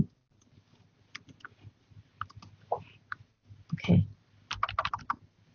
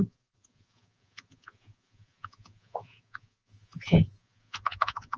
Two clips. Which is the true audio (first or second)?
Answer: first